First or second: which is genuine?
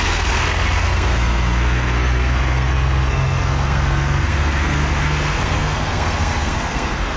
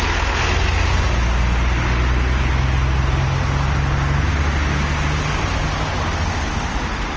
second